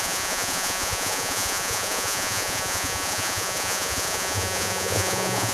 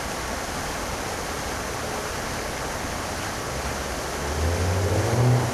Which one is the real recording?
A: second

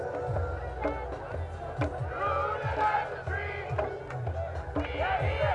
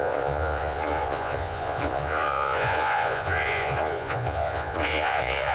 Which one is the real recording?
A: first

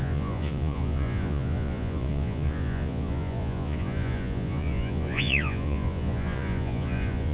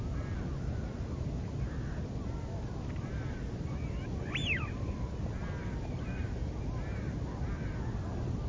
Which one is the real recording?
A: second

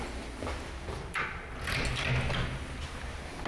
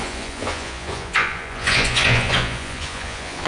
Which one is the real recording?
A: first